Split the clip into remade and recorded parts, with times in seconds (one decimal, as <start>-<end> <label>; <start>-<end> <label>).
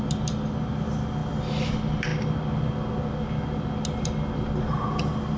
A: 0.0-5.4 recorded